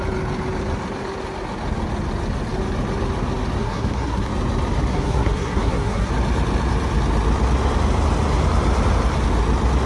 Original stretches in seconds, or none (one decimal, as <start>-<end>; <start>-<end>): 0.0-3.6; 4.3-4.9; 6.1-9.9